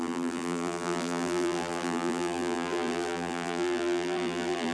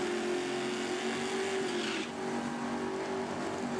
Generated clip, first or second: first